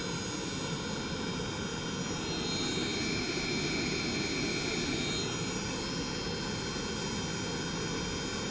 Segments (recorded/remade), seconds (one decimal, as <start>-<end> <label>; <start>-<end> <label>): 0.0-8.5 recorded